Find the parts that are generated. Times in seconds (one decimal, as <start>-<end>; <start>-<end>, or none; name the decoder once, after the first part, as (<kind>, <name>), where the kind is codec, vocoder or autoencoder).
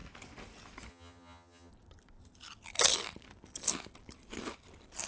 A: 0.9-1.7 (vocoder, HiFi-GAN)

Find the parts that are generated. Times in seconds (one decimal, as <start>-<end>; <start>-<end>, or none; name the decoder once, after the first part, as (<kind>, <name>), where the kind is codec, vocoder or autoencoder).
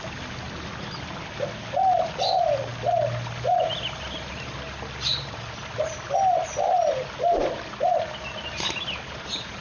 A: 2.7-7.7 (vocoder, BigVGAN v2)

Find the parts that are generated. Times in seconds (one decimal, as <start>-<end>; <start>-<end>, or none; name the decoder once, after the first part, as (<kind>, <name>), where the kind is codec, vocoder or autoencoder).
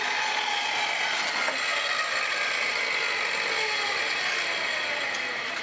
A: none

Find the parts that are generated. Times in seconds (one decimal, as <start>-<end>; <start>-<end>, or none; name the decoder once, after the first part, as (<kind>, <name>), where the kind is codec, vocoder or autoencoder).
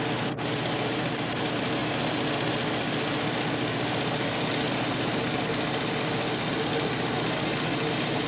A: none